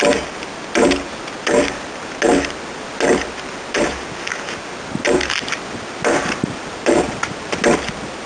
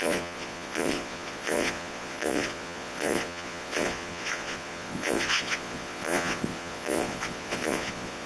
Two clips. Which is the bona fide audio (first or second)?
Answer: first